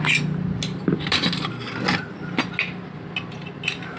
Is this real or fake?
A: real